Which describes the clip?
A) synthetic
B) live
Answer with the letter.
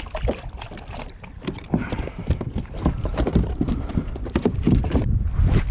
A